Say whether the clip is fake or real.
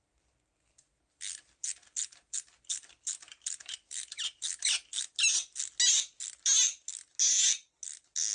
real